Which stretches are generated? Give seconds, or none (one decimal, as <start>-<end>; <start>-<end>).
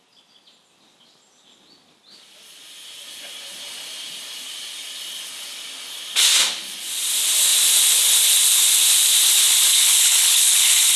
9.7-11.0